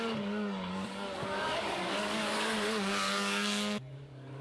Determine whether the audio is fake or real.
fake